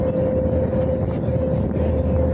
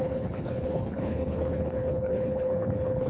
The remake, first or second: second